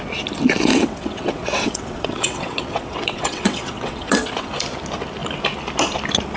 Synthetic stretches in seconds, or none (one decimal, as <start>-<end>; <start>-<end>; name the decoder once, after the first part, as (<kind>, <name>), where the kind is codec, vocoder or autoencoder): 0.7-4.5 (vocoder, WaveNeXt)